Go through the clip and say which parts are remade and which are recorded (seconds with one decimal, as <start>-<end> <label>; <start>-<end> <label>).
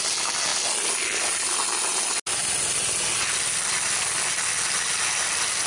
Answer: 0.0-5.7 recorded